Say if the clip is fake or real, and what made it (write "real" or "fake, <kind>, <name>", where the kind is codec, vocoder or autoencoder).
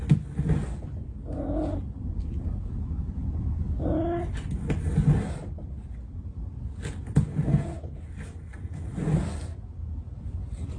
real